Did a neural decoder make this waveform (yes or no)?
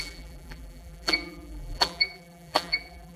yes